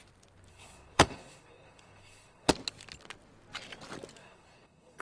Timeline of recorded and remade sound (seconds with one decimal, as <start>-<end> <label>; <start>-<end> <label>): 0.0-0.5 recorded; 0.5-2.5 remade; 2.5-4.2 recorded; 4.2-5.0 remade